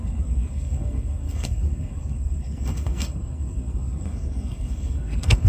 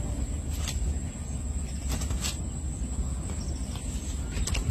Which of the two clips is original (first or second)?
second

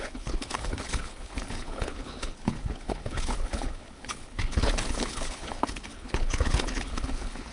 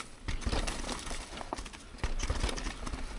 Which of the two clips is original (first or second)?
second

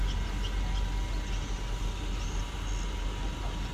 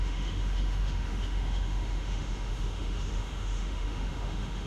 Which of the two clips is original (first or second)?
first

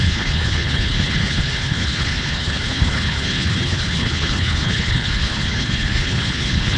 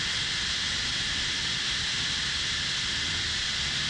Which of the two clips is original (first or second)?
second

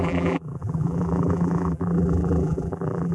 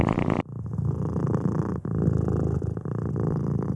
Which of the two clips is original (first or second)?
second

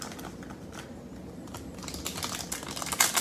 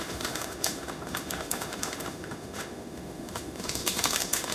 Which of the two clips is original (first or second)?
first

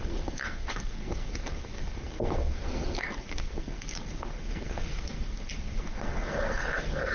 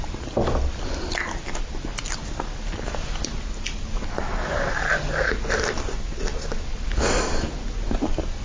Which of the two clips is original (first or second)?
second